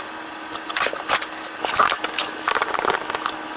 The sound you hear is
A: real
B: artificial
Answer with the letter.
A